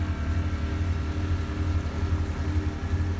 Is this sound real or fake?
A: real